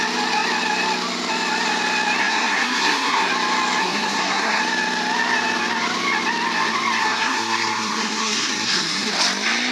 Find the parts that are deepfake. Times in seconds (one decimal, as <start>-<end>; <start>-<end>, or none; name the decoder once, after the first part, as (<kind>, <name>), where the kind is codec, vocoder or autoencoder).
2.2-3.3 (codec, SNAC); 3.8-4.6; 7.0-9.1